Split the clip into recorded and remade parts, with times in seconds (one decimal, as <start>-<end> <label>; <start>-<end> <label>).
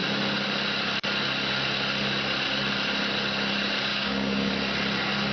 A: 0.0-3.9 recorded; 3.9-4.5 remade; 4.5-5.3 recorded